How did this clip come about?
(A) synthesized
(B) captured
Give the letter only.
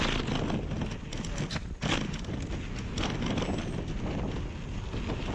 B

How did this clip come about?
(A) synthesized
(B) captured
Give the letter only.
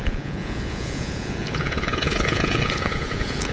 A